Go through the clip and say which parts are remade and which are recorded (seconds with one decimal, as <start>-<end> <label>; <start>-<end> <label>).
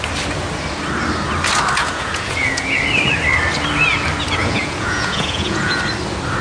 0.0-1.8 recorded; 1.8-2.8 remade; 2.8-4.4 recorded; 4.4-5.8 remade; 5.8-6.4 recorded